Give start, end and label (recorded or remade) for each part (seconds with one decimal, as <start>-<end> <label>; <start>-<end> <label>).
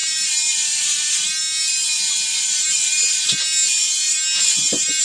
0.0-5.0 recorded